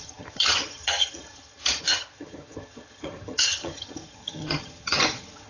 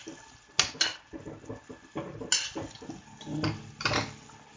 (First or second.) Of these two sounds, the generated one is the first